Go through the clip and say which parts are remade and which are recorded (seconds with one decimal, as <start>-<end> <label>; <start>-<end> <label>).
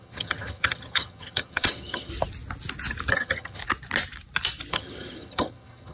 0.0-2.1 remade; 2.1-3.1 recorded; 3.1-3.6 remade; 3.6-4.7 recorded; 4.7-5.9 remade